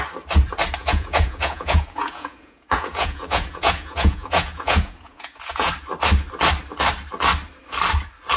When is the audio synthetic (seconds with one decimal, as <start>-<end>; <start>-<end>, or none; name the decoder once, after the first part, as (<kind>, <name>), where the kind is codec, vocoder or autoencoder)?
0.8-5.7 (vocoder, Vocos)